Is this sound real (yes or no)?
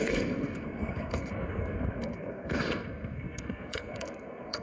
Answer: no